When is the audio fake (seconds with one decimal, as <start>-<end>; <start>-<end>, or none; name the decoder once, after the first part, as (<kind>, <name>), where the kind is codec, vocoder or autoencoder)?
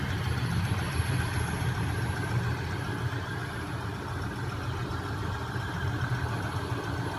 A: 4.8-6.1 (vocoder, BigVGAN v2)